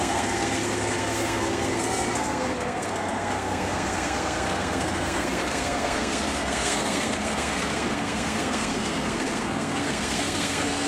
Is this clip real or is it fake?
fake